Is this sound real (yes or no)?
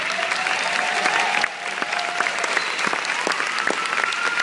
yes